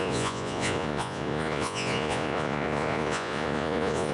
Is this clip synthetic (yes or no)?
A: yes